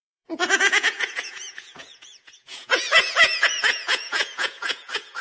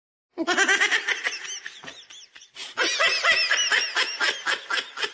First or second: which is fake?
first